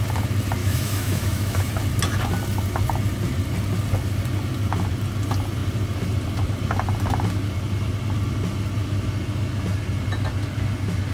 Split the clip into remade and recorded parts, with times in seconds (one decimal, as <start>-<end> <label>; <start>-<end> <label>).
0.0-0.6 recorded; 0.6-1.7 remade; 1.7-11.1 recorded